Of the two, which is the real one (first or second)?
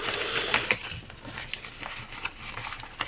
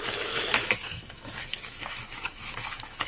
first